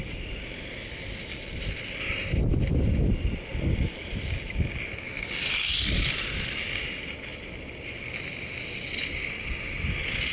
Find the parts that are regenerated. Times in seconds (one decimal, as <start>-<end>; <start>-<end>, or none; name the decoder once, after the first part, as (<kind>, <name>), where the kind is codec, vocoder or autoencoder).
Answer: none